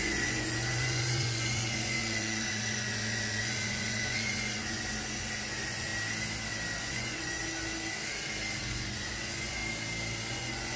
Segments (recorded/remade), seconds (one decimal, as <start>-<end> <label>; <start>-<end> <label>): 0.0-5.9 remade; 5.9-6.8 recorded; 6.8-7.4 remade; 7.4-8.6 recorded; 8.6-9.6 remade; 9.6-10.3 recorded; 10.3-10.8 remade